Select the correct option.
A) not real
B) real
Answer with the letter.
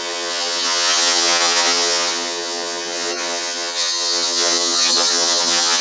A